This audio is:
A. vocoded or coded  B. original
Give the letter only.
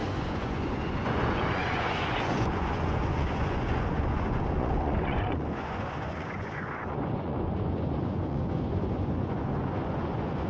A